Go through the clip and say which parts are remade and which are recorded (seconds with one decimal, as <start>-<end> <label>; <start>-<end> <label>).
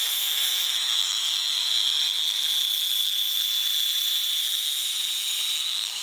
0.0-1.8 remade; 1.8-4.4 recorded; 4.4-4.9 remade; 4.9-5.6 recorded; 5.6-6.0 remade